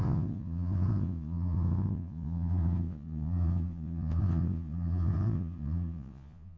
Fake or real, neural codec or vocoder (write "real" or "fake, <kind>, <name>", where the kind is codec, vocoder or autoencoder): fake, vocoder, Vocos